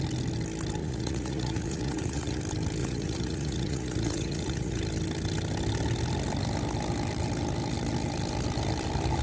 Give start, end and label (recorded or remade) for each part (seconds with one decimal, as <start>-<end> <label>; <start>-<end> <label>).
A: 0.0-0.8 recorded; 0.8-2.4 remade; 2.4-2.8 recorded; 2.8-4.8 remade; 4.8-9.2 recorded